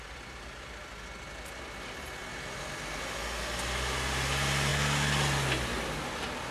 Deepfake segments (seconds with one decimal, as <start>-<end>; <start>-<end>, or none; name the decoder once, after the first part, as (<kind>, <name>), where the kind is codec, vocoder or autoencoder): none